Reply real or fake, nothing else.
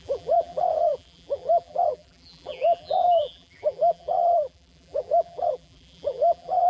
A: fake